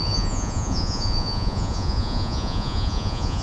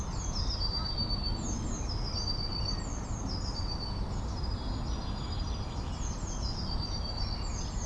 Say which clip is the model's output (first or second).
first